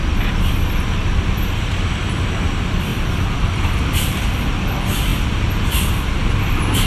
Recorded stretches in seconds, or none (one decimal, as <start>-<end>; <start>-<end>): 0.0-2.9; 4.3-6.9